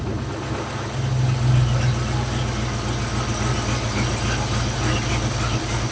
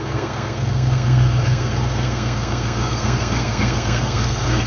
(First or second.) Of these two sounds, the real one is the first